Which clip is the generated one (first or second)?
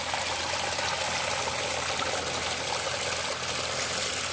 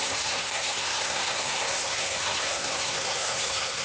second